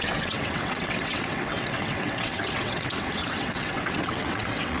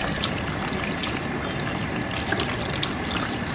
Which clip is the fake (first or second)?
first